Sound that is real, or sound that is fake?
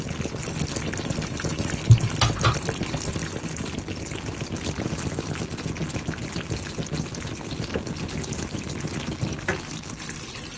real